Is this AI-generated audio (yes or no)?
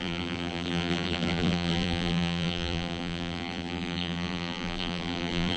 yes